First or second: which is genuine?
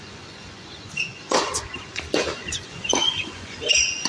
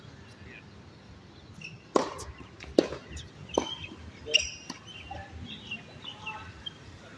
second